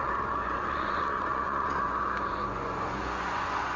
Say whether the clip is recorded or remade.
remade